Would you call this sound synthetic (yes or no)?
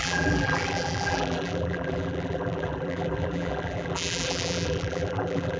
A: yes